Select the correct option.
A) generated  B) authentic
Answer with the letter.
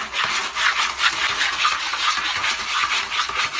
B